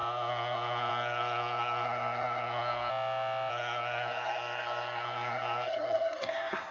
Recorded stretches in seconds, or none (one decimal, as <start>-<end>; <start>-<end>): 2.9-3.5